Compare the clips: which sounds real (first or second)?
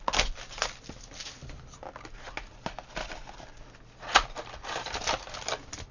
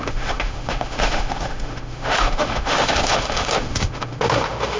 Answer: first